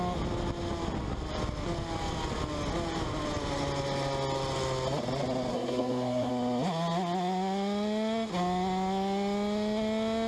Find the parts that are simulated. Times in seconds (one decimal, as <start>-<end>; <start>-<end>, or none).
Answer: 5.5-6.3